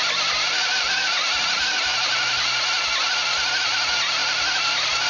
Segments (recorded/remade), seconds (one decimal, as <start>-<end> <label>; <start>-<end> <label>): 0.0-5.1 recorded